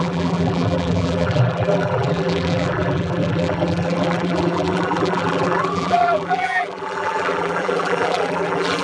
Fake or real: fake